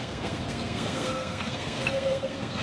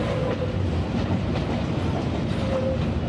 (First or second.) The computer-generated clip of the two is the first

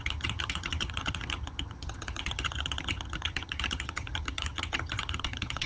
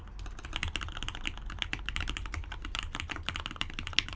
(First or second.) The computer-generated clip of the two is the first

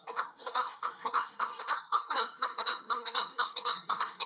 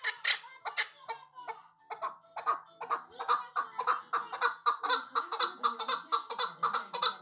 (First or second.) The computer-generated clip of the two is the first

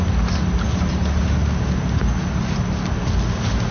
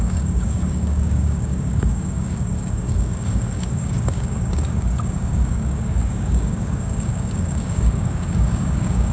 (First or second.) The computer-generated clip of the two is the second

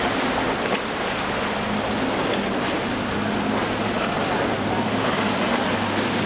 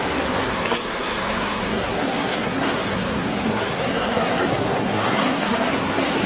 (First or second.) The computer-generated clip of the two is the second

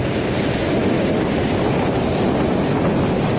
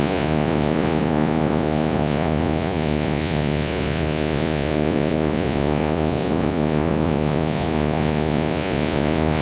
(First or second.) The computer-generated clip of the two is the second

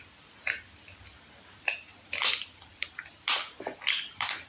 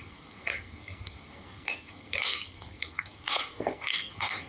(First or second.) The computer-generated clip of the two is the second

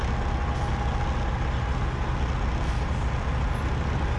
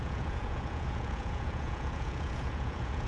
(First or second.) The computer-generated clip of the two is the second